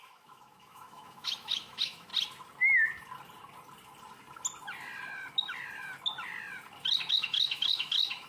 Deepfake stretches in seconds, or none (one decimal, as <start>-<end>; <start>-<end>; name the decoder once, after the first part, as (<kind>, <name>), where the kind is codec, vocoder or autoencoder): 0.0-2.1 (autoencoder, DAC-VAE); 7.1-8.3